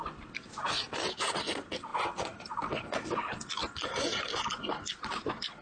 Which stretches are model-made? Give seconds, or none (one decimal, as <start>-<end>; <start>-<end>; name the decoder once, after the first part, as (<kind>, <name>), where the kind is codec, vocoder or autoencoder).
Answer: none

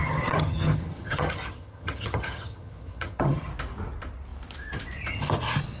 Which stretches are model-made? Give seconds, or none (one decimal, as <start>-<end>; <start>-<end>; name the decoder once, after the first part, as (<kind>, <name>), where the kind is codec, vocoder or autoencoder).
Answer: 0.0-3.5 (vocoder, HiFi-GAN)